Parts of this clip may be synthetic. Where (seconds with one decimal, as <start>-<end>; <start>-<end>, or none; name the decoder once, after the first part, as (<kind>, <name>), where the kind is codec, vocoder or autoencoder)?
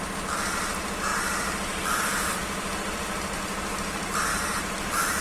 1.1-3.4 (vocoder, BigVGAN v2); 4.3-5.2